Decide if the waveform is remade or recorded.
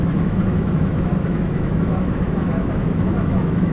remade